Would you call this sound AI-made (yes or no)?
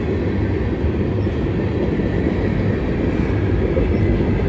no